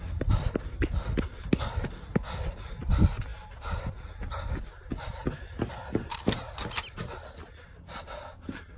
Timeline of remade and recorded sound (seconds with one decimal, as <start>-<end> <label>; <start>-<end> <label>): 0.0-8.8 recorded